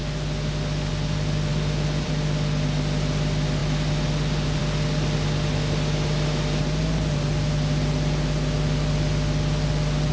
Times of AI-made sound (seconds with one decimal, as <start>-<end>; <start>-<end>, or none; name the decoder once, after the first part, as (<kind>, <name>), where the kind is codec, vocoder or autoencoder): 1.5-2.1 (vocoder, BigVGAN v2)